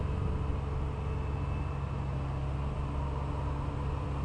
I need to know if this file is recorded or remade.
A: recorded